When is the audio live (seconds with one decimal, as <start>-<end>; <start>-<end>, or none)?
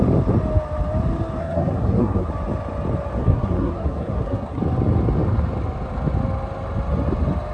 0.0-1.4; 2.3-3.2; 4.6-7.5